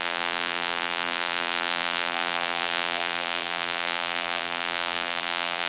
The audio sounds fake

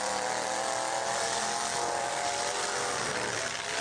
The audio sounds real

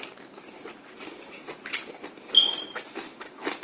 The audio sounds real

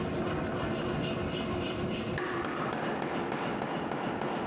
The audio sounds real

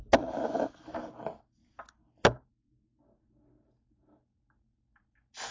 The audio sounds real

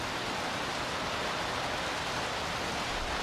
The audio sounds real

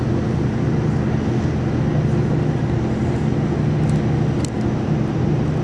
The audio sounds real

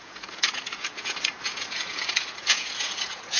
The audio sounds fake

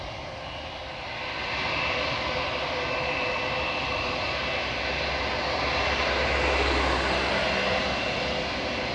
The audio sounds real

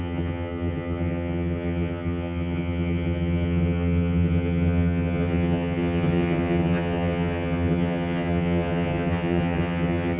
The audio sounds fake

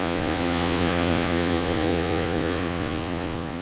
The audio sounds fake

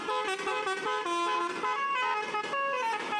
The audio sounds real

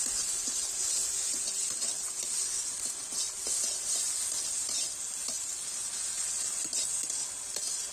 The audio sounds real